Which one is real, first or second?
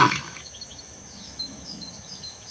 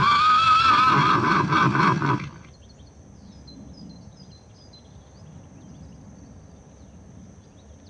second